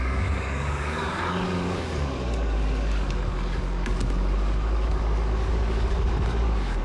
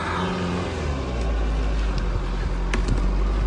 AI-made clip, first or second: first